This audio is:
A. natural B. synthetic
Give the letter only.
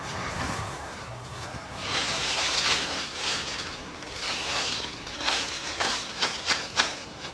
B